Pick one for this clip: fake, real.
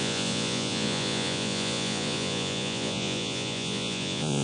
fake